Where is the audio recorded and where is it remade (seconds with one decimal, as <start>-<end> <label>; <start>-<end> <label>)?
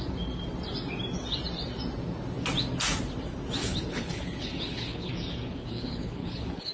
0.0-3.6 recorded; 3.6-5.1 remade; 5.1-5.6 recorded; 5.6-6.7 remade